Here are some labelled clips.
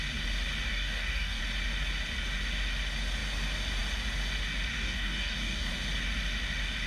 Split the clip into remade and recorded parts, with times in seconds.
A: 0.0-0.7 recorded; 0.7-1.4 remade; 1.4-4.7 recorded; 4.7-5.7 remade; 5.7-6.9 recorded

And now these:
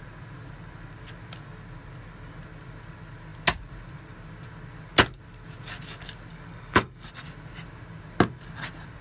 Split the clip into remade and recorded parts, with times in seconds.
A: 0.0-6.3 recorded; 6.3-7.1 remade; 7.1-9.0 recorded

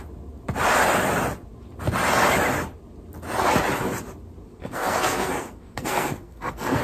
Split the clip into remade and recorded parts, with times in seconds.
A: 0.0-4.5 recorded; 4.5-6.8 remade

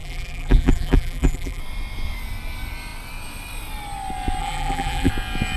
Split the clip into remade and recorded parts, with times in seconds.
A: 0.0-1.6 remade; 1.6-4.4 recorded; 4.4-5.1 remade; 5.1-5.6 recorded

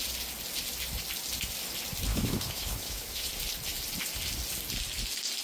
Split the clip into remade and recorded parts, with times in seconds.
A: 0.0-2.1 recorded; 2.1-3.3 remade; 3.3-5.4 recorded

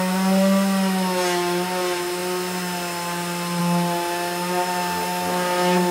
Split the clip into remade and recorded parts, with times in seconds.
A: 0.0-5.9 recorded

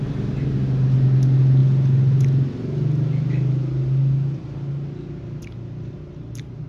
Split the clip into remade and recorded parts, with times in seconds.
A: 0.0-6.7 recorded